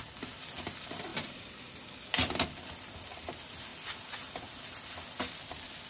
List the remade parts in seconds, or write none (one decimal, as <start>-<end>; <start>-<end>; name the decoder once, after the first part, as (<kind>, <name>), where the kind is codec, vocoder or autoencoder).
none

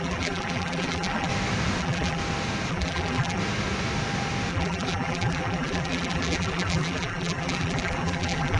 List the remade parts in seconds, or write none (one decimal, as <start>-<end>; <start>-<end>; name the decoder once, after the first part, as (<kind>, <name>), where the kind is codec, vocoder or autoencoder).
0.0-1.3 (vocoder, BigVGAN v2); 1.8-2.2; 2.7-3.4; 4.5-8.6